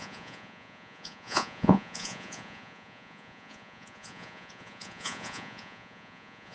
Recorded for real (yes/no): no